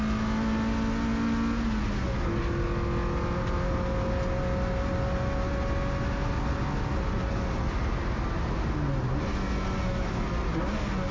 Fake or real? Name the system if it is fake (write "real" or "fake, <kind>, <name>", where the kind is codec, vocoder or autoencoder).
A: real